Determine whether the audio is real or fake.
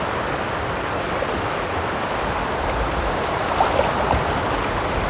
real